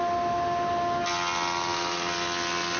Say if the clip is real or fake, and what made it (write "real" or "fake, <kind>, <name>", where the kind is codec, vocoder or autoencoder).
real